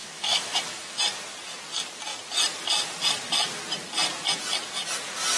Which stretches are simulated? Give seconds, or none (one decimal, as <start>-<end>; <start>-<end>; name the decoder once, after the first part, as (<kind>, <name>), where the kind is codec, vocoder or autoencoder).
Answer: 0.0-1.0 (autoencoder, DAC-VAE)